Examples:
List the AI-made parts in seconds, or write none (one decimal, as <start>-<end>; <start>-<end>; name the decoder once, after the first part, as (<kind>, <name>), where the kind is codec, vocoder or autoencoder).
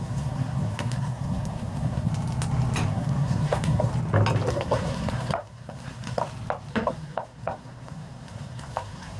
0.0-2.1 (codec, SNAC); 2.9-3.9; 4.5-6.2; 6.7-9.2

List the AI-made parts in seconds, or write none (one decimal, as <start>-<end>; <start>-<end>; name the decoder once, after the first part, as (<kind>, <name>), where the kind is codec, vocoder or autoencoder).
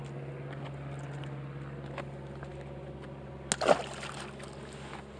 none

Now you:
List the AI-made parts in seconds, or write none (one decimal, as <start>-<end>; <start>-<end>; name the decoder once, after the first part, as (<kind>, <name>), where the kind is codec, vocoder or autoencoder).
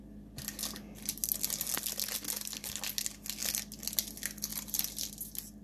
none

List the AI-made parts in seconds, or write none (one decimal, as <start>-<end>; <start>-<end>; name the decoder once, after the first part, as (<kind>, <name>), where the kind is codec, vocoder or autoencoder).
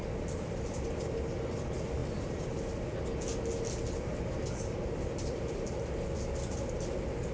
none